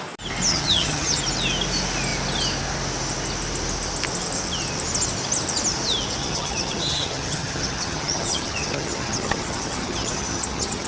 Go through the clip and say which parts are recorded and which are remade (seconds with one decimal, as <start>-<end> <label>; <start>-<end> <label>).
0.0-0.5 recorded; 0.5-1.2 remade; 1.2-6.2 recorded; 6.2-10.9 remade